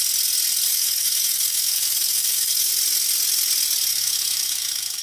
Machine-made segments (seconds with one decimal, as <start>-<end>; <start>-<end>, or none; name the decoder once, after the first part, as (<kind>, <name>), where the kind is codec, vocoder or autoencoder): 0.7-2.7 (autoencoder, DAC-VAE); 3.9-5.0